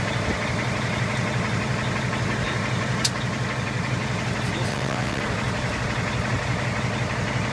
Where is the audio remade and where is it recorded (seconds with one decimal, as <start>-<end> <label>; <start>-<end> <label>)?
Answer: 0.0-4.7 recorded; 4.7-5.2 remade; 5.2-7.5 recorded